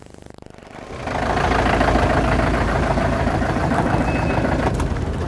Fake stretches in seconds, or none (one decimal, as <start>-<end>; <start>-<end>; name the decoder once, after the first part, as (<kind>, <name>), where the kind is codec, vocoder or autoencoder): 0.0-0.6 (vocoder, BigVGAN v2); 2.6-5.3